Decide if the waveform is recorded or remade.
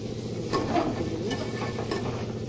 recorded